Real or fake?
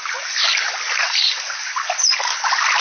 real